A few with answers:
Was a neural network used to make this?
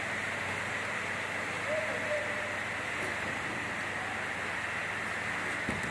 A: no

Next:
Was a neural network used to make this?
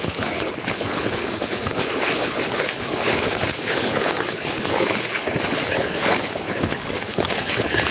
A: yes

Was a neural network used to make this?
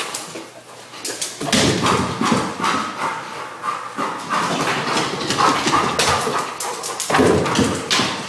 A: no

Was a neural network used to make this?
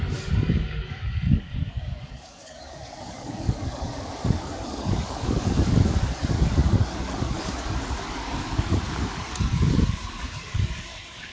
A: yes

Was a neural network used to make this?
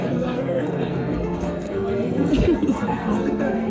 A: yes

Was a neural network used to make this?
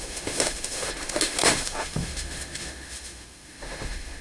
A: yes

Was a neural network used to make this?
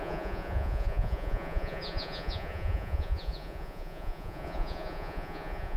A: yes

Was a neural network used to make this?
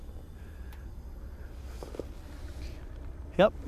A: no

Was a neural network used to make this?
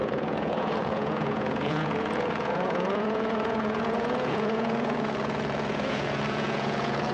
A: yes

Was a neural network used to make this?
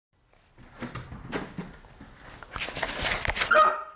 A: no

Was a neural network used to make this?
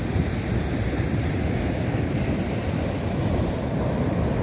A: no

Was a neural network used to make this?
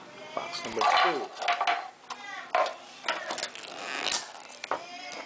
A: no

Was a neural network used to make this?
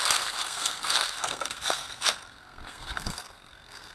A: yes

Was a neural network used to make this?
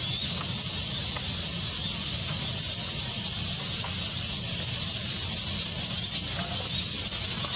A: no